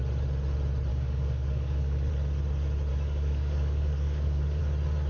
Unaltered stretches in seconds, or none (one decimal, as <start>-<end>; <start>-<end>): 0.0-0.9; 2.1-2.9; 4.6-5.1